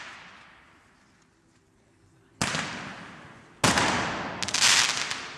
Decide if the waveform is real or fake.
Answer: real